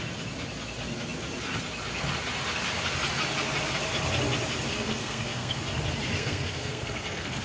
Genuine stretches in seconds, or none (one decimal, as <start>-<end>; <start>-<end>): 0.0-4.7; 5.6-6.2